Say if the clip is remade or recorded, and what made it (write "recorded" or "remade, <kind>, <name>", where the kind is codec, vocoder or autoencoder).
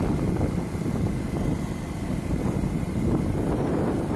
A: recorded